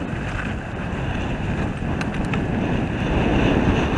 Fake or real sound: real